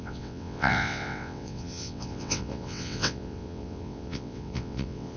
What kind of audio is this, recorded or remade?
remade